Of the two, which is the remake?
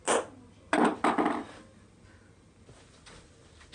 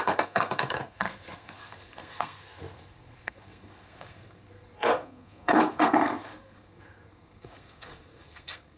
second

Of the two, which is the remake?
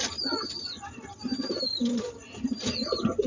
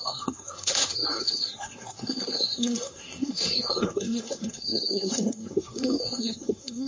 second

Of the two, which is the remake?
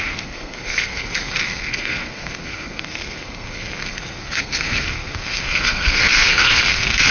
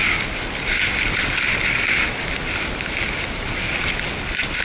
first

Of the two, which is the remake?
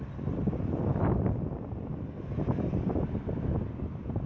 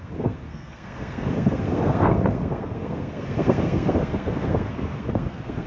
second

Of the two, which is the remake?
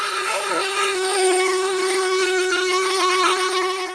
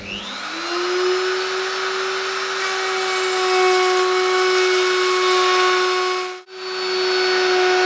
first